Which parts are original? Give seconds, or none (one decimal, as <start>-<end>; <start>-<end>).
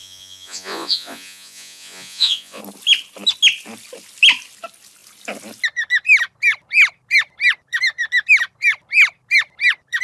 2.6-10.0